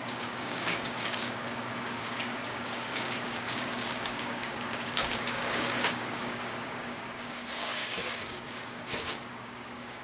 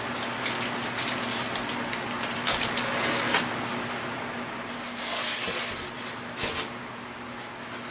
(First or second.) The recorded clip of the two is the second